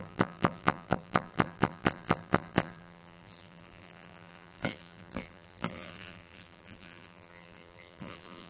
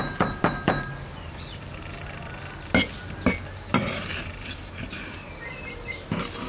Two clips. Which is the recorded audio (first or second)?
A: second